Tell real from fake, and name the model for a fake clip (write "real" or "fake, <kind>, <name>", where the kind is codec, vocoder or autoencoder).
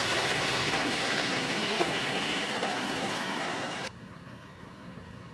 fake, codec, SNAC